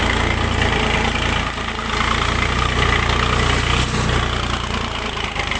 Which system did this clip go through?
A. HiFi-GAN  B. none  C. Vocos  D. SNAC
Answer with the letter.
B